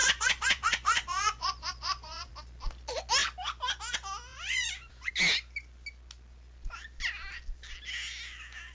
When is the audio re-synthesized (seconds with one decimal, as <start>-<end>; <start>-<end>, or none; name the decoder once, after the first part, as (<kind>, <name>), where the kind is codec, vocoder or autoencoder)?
0.0-2.3 (vocoder, Vocos); 4.3-5.1